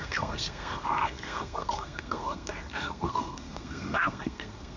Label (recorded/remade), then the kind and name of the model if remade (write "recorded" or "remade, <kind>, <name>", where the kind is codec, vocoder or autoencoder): remade, codec, SNAC